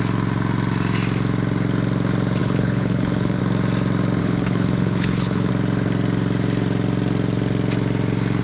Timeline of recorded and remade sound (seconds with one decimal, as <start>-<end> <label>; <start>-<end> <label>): 0.0-2.4 recorded; 2.4-3.4 remade; 3.4-4.2 recorded; 4.2-5.5 remade; 5.5-8.4 recorded